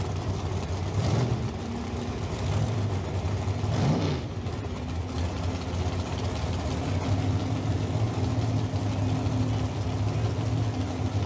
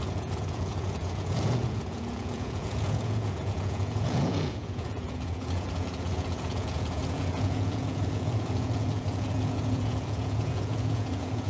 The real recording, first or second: first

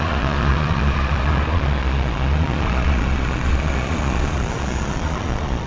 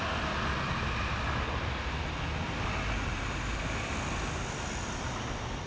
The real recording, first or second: second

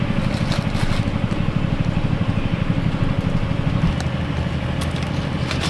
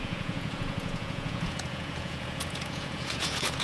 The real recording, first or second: first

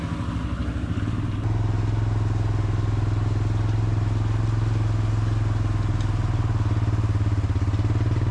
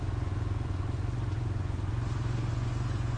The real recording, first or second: first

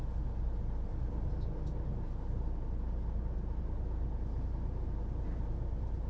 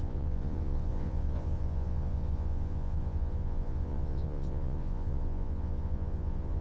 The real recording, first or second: first